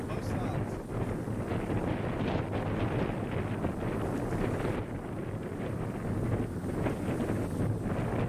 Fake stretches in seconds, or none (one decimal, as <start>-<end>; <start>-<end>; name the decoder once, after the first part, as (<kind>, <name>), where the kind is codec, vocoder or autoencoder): none